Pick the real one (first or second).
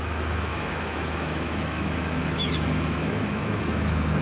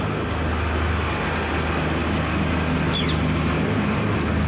second